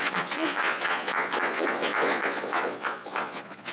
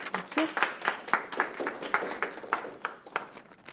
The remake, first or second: first